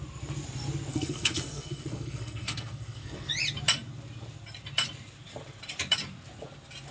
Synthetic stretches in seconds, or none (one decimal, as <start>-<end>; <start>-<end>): 0.9-3.3